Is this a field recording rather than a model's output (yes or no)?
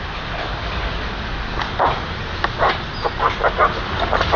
yes